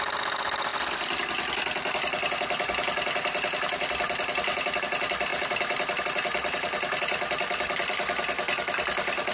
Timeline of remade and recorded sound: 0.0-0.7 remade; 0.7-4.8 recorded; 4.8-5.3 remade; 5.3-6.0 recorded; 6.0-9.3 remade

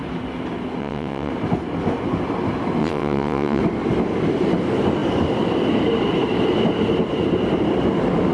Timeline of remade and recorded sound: 0.0-0.8 recorded; 0.8-1.3 remade; 1.3-2.8 recorded; 2.8-3.6 remade; 3.6-8.3 recorded

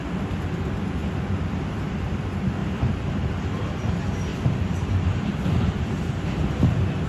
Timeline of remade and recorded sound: 0.0-1.0 recorded; 1.0-2.1 remade; 2.1-2.6 recorded; 2.6-3.9 remade; 3.9-4.3 recorded; 4.3-6.2 remade; 6.2-7.1 recorded

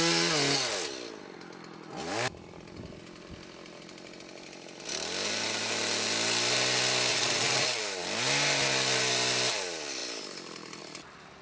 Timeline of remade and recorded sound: 0.0-7.1 recorded; 7.1-7.8 remade; 7.8-11.4 recorded

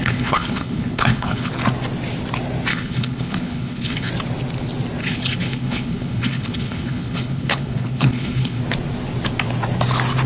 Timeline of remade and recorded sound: 0.0-1.5 remade; 1.5-2.7 recorded; 2.7-4.1 remade; 4.1-5.0 recorded; 5.0-8.6 remade; 8.6-10.3 recorded